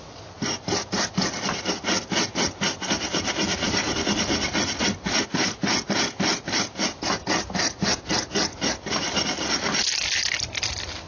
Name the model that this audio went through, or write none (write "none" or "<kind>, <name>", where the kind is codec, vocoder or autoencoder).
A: none